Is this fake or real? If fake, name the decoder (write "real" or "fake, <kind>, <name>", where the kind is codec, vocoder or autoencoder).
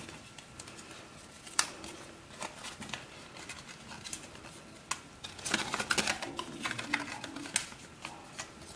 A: real